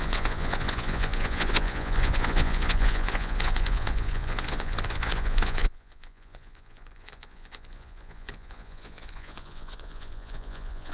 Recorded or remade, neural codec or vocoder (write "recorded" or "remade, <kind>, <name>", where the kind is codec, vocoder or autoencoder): remade, vocoder, Vocos